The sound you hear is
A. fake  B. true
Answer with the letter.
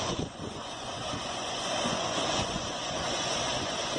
A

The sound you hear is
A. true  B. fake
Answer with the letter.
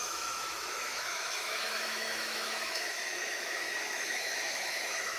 B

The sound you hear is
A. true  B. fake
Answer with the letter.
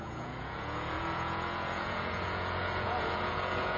B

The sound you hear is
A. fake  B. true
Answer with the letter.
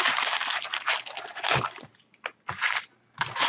B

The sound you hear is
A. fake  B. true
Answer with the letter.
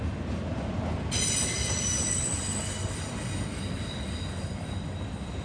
B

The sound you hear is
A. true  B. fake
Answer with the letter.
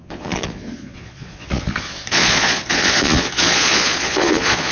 B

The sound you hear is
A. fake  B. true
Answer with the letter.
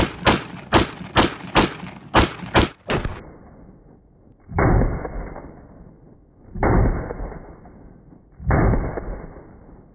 B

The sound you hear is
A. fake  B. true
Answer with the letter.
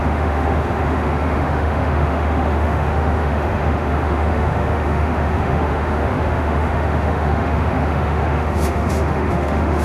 A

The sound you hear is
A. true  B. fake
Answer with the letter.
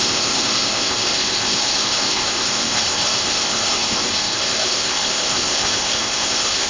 B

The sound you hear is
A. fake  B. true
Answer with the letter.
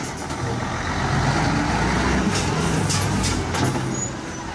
B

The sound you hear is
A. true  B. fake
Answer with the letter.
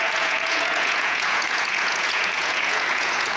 B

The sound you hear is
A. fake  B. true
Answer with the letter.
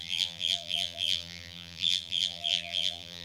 A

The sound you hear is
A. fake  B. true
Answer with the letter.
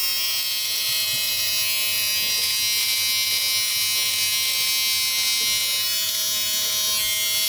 B